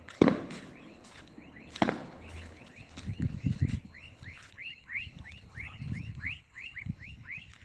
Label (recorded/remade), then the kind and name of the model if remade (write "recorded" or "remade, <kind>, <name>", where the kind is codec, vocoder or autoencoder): remade, codec, HILCodec